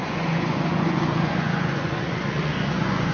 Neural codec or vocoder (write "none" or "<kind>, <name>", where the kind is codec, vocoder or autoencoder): vocoder, Vocos